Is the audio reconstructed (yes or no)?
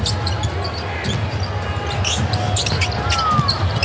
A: no